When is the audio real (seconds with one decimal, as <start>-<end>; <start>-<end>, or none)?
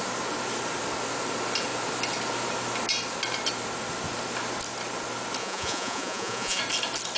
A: 0.0-5.4; 6.6-7.2